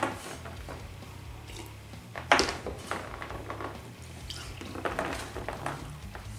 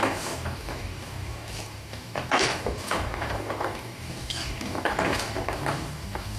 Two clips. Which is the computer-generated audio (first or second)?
second